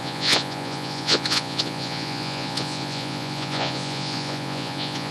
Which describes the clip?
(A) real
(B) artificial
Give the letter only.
B